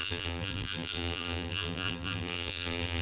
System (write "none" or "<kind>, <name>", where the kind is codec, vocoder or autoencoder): vocoder, BigVGAN v2